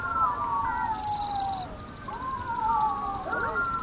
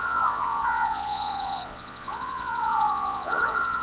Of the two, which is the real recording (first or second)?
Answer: first